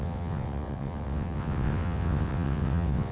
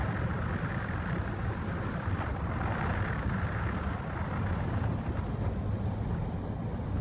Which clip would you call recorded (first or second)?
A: second